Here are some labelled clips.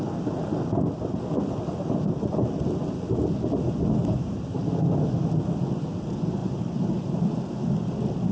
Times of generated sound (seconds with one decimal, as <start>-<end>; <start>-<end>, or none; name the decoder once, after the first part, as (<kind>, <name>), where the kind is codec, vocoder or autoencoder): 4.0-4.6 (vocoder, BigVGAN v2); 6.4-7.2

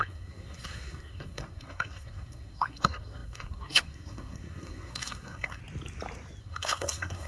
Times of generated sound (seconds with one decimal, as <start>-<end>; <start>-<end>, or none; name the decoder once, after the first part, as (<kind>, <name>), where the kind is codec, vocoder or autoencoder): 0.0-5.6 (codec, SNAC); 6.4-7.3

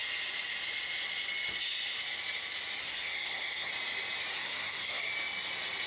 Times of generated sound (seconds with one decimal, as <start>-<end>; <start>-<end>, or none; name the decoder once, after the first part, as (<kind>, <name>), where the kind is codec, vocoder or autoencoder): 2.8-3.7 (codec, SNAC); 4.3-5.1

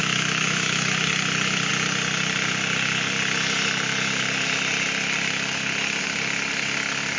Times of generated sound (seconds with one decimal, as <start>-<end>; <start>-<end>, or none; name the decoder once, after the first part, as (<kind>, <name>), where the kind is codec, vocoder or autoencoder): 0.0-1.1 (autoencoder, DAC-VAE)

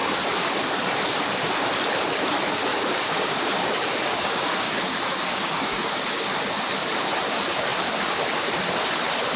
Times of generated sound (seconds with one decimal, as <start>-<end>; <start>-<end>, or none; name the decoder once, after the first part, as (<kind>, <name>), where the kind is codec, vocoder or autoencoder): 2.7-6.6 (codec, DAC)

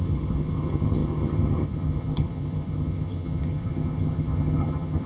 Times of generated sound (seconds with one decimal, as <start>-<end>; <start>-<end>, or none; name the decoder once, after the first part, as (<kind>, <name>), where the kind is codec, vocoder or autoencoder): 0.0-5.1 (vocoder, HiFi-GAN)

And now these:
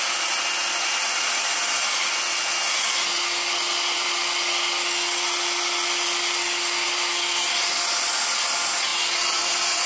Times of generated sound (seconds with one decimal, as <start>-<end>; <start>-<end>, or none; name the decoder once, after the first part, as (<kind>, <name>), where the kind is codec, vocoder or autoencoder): none

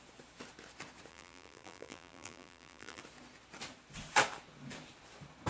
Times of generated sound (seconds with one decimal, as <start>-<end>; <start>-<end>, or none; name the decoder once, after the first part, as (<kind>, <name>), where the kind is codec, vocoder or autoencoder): 1.1-3.0 (vocoder, BigVGAN v2)